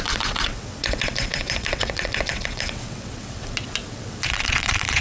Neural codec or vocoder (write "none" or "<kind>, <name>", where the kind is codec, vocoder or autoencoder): vocoder, WaveNeXt